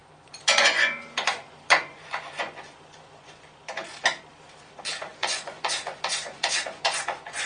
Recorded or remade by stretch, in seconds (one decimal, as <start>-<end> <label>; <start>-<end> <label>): 0.0-4.0 remade; 4.0-5.1 recorded; 5.1-7.5 remade